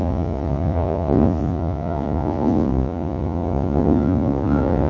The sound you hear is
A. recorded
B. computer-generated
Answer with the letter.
B